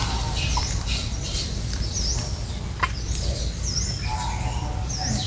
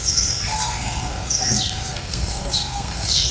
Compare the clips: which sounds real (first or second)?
first